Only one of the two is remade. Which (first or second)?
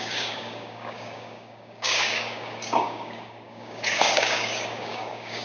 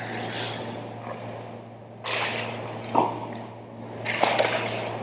first